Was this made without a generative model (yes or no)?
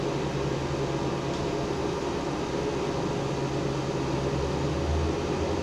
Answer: yes